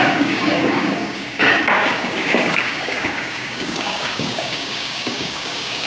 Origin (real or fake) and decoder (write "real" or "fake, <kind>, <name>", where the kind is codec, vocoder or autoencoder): fake, codec, DAC